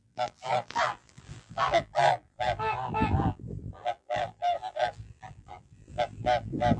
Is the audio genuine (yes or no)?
no